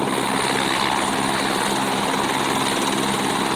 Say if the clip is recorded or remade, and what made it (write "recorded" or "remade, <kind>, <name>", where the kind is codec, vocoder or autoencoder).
recorded